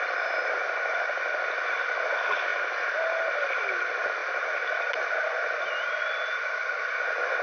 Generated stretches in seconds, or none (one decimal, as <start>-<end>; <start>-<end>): none